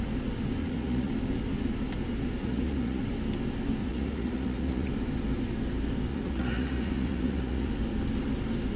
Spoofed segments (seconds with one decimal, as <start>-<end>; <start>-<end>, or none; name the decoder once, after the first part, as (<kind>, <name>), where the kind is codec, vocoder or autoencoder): 0.6-1.1 (vocoder, Vocos); 2.4-3.0; 3.8-4.9; 6.1-7.7